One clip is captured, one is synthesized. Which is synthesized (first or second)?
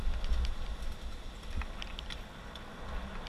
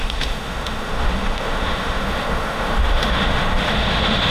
second